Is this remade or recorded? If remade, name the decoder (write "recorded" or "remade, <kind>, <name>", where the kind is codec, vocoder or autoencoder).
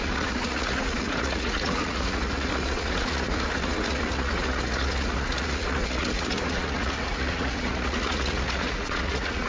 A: remade, vocoder, Vocos